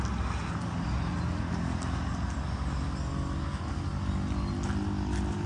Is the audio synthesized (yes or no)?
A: no